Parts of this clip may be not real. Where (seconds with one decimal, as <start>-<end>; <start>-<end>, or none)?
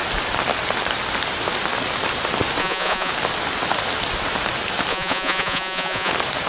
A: 2.6-3.1; 4.9-6.1